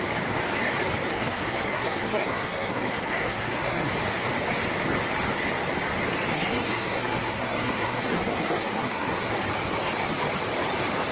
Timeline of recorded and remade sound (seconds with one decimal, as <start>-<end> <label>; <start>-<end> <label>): 0.0-1.1 recorded; 1.1-3.9 remade; 3.9-6.3 recorded; 6.3-9.3 remade; 9.3-11.1 recorded